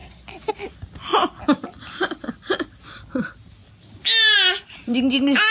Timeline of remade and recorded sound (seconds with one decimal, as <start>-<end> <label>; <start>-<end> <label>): 0.0-1.1 recorded; 1.1-2.3 remade; 2.3-5.5 recorded